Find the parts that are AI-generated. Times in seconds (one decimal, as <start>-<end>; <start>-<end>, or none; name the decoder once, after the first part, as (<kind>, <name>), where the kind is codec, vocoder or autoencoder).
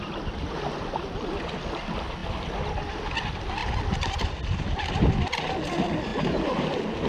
none